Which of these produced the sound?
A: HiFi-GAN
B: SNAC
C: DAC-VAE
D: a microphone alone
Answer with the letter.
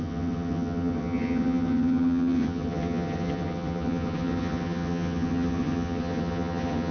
A